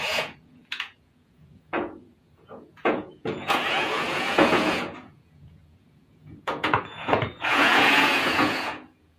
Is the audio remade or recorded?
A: remade